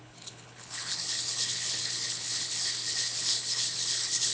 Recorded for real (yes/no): no